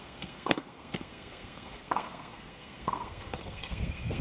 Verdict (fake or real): fake